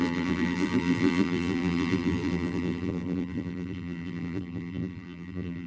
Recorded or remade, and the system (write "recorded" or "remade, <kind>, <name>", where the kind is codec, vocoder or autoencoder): remade, vocoder, BigVGAN v2